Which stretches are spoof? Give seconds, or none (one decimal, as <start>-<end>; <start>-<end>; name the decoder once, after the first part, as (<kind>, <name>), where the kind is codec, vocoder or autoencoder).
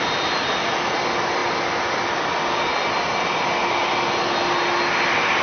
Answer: none